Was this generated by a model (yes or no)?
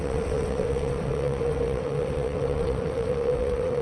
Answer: yes